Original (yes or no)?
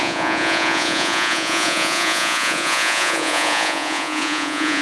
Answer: no